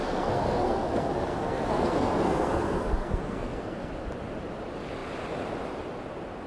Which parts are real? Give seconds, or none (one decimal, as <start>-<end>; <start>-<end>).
3.9-6.5